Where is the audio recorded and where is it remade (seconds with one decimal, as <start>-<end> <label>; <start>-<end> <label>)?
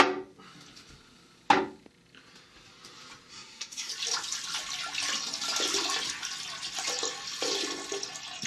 0.0-3.3 recorded; 3.3-3.9 remade; 3.9-8.5 recorded